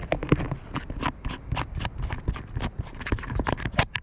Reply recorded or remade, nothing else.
recorded